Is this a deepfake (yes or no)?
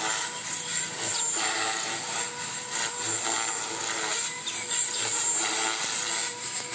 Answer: no